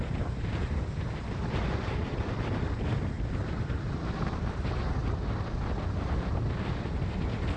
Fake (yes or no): no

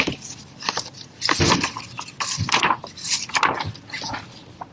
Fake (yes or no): no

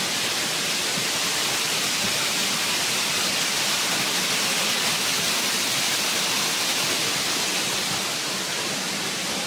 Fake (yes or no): no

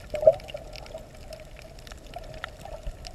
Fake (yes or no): no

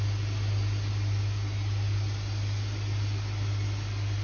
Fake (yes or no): no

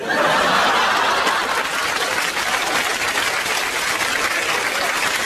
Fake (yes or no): no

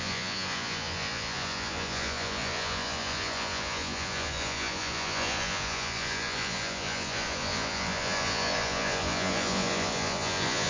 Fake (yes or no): yes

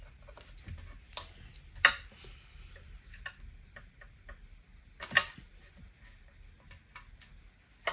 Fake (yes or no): no